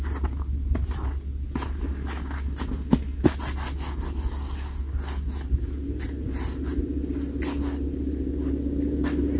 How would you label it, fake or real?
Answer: real